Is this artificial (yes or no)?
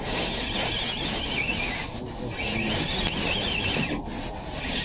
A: no